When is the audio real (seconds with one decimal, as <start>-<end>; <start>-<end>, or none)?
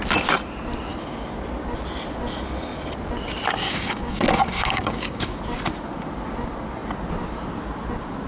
0.0-3.6; 5.4-8.3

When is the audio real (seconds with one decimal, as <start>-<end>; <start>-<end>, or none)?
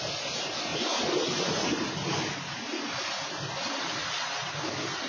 0.0-5.1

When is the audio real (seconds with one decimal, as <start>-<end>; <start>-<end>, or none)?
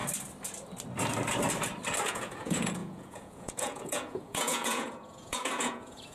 0.0-2.1